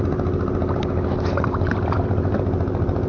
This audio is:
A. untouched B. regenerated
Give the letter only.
A